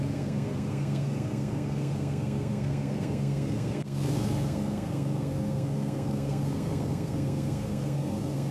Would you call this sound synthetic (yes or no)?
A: yes